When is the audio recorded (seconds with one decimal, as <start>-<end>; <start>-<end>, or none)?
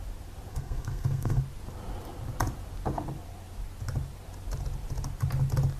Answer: 0.0-0.5; 1.4-5.8